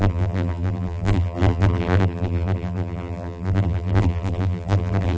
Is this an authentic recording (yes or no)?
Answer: no